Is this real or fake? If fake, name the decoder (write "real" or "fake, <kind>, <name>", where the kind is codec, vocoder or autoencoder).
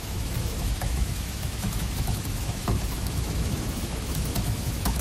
fake, autoencoder, DAC-VAE